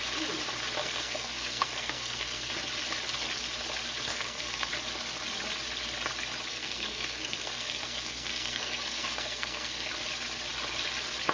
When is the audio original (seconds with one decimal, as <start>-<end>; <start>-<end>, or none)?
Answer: 0.0-0.8; 2.5-4.1; 4.7-6.5; 9.9-11.3